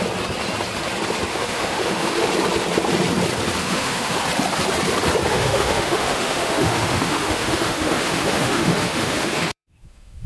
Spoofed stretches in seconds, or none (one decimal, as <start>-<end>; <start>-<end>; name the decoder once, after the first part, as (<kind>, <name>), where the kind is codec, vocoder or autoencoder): 1.3-2.3 (autoencoder, DAC-VAE); 3.6-4.2; 5.3-10.3